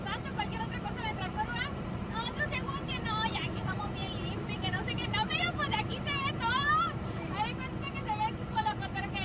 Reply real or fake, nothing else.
fake